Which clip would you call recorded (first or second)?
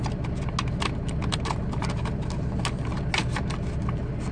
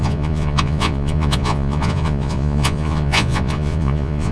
first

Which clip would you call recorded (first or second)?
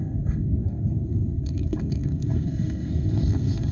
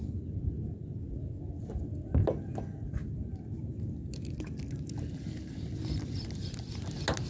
second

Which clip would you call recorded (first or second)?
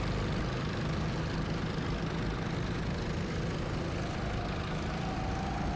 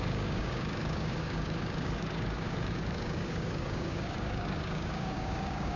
first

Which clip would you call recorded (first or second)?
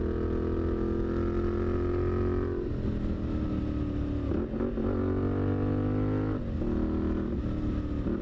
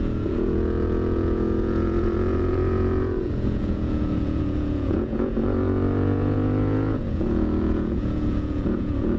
first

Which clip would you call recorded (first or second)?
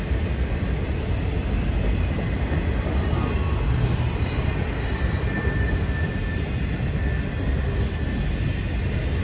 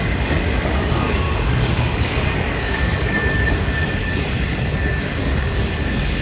first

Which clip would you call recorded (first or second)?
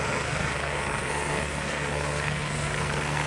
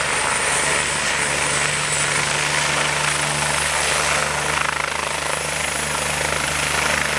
second